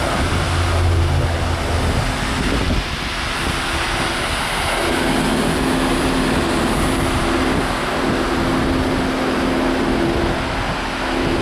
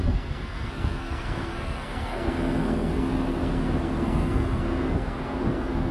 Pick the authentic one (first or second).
first